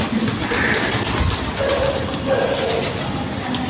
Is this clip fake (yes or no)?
no